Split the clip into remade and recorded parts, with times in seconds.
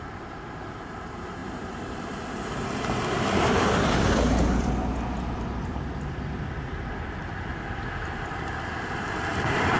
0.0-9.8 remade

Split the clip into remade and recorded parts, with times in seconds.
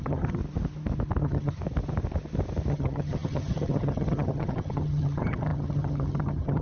0.0-0.4 remade; 0.4-1.2 recorded; 1.2-1.6 remade; 1.6-2.7 recorded; 2.7-6.6 remade